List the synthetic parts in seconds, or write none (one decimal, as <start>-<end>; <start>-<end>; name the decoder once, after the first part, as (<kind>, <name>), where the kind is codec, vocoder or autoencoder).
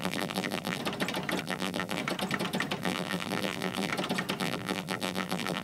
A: 0.0-0.8 (vocoder, BigVGAN v2); 1.4-2.0; 2.8-3.9; 4.4-5.6